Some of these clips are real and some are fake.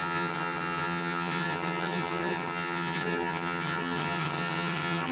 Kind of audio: fake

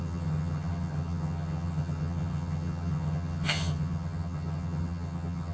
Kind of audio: fake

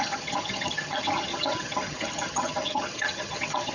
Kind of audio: fake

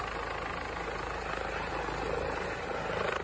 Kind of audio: real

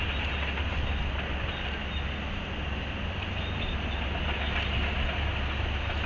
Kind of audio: real